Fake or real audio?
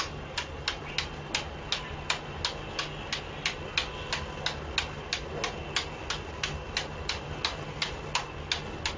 real